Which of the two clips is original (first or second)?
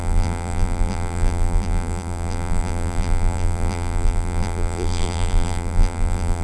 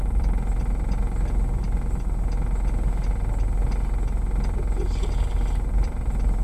second